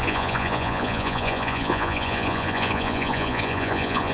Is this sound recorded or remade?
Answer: remade